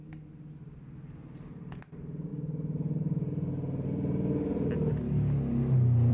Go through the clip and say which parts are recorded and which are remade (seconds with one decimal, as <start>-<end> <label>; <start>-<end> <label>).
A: 0.0-6.1 recorded